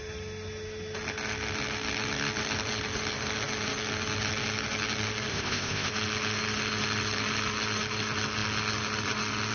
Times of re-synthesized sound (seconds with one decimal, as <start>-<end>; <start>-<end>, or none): 5.3-5.9